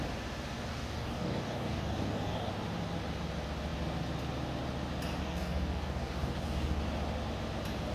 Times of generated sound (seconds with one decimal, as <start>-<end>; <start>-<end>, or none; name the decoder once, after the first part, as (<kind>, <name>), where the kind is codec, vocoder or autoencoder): 0.7-2.5 (codec, DAC); 5.2-6.8